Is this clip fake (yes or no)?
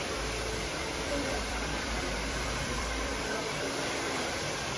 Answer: yes